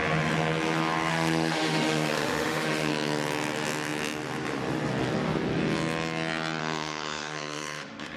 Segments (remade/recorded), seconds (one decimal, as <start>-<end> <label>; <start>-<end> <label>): 0.0-1.1 recorded; 1.1-2.9 remade; 2.9-6.6 recorded; 6.6-8.2 remade